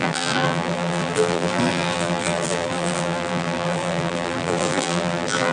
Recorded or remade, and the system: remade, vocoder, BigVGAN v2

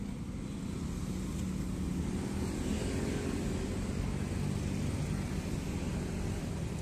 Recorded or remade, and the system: recorded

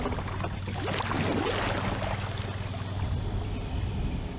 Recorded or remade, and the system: recorded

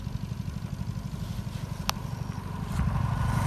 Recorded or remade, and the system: recorded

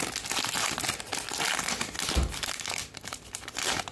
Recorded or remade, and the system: recorded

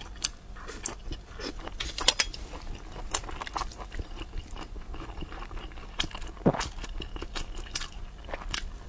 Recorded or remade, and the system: recorded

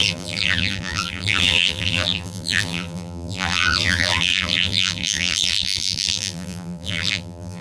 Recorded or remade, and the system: remade, vocoder, BigVGAN v2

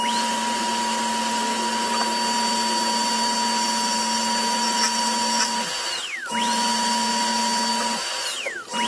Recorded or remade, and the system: recorded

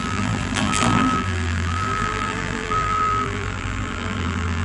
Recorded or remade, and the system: remade, vocoder, BigVGAN v2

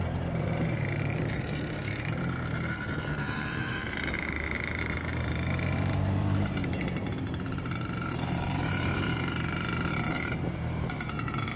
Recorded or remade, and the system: remade, vocoder, BigVGAN v2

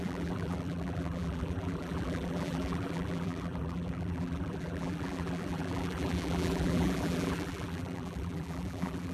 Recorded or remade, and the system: remade, vocoder, BigVGAN v2